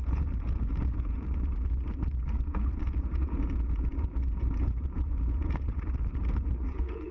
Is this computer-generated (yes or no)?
yes